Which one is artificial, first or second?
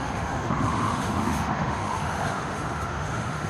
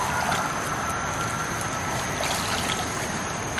first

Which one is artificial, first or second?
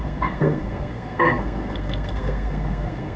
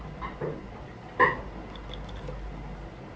first